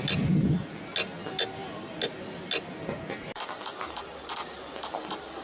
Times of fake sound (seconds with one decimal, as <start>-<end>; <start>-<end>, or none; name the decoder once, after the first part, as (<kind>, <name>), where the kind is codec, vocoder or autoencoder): none